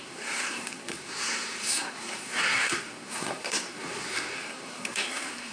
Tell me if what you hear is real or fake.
fake